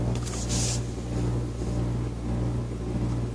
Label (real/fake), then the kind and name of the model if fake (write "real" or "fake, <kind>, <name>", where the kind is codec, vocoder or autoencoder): real